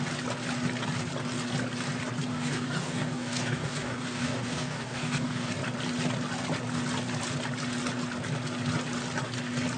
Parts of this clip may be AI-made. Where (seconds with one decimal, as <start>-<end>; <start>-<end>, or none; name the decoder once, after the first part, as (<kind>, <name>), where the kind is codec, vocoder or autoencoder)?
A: 2.3-5.5 (codec, DAC)